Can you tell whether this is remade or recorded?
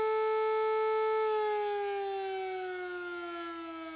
recorded